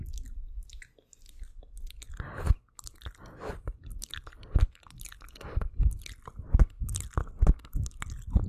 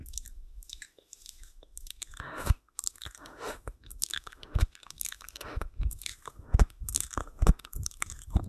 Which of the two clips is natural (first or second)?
first